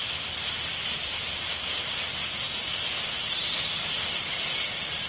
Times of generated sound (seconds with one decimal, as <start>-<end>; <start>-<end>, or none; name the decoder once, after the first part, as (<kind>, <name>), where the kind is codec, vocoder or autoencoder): none